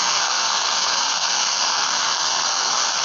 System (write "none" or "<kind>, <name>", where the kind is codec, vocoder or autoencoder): codec, SNAC